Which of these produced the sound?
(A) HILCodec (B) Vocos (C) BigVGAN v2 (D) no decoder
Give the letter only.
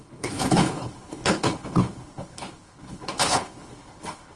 A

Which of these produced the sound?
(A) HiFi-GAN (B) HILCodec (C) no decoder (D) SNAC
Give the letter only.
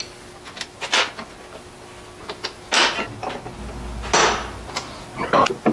C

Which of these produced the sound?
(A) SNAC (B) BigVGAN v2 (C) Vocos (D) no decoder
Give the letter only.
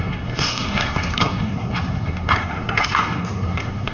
A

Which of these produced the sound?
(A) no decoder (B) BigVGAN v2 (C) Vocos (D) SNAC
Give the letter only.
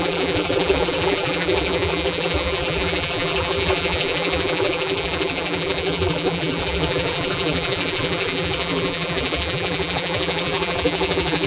B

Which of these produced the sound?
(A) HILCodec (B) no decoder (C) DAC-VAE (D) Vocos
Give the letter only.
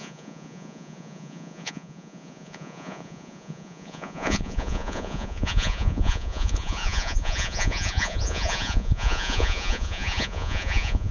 D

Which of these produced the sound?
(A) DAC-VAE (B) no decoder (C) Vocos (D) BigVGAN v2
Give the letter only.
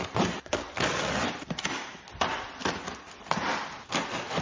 B